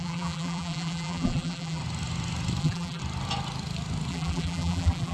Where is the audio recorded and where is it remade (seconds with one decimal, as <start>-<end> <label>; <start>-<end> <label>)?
0.0-1.8 remade; 1.8-2.6 recorded; 2.6-3.0 remade; 3.0-4.1 recorded; 4.1-5.1 remade